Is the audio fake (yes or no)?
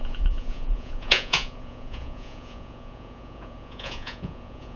yes